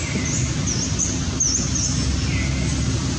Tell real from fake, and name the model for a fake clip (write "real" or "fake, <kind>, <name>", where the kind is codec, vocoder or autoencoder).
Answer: real